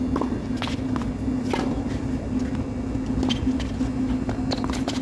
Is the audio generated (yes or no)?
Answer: no